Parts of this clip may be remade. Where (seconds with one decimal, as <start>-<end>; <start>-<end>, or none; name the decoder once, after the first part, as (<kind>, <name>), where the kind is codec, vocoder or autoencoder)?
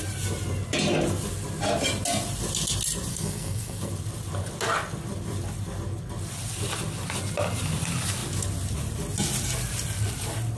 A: 3.1-3.9 (codec, SNAC)